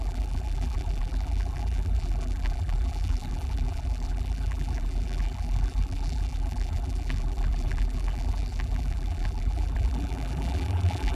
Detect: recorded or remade remade